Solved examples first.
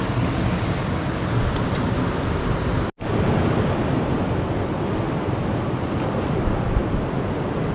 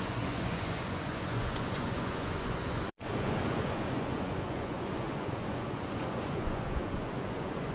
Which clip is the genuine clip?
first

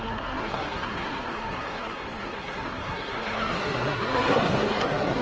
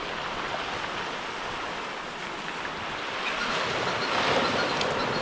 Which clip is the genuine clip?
second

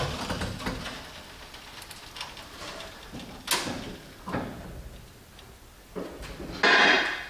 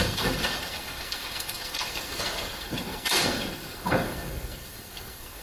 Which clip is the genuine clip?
first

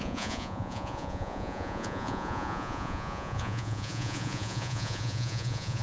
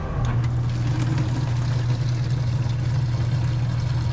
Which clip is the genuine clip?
second